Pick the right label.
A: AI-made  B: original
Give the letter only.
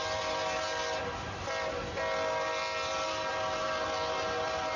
B